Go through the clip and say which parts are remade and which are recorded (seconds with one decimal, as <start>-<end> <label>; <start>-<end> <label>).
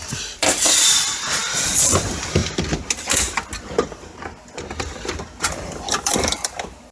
0.0-1.4 remade; 1.4-2.0 recorded; 2.0-2.4 remade; 2.4-5.5 recorded; 5.5-6.9 remade